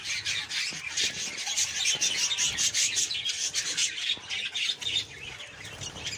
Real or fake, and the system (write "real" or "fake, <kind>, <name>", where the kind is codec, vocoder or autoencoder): fake, vocoder, BigVGAN v2